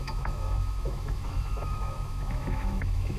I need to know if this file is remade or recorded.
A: remade